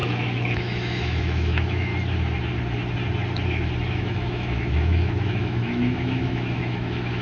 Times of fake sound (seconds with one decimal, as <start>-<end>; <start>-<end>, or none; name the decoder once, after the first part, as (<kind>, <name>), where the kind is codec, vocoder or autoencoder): 0.0-1.9 (autoencoder, DAC-VAE); 3.9-7.2